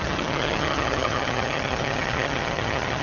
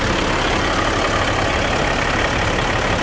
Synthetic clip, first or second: first